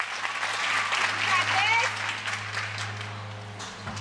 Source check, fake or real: real